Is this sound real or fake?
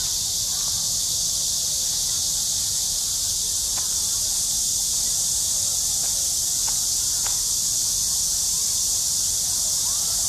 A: real